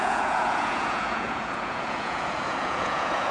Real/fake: fake